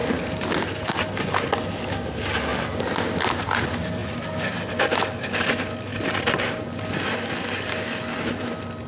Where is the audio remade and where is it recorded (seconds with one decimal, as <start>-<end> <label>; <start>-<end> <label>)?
0.0-2.5 recorded; 2.5-3.2 remade; 3.2-5.9 recorded; 5.9-7.7 remade; 7.7-8.9 recorded